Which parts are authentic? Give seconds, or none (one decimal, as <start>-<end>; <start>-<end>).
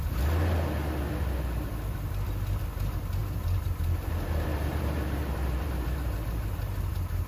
0.0-3.2; 4.1-4.5